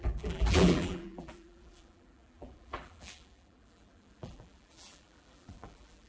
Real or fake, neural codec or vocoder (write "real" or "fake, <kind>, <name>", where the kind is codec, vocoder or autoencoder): fake, vocoder, BigVGAN v2